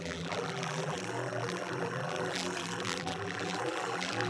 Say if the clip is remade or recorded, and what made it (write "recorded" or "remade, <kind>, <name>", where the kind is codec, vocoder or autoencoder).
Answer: remade, vocoder, BigVGAN v2